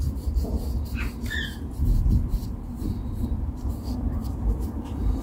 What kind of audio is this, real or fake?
fake